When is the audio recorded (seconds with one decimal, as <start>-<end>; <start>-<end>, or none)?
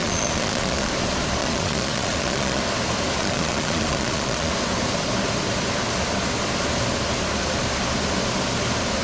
0.9-1.4; 2.6-3.2; 4.5-9.0